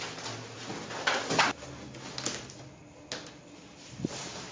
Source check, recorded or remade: recorded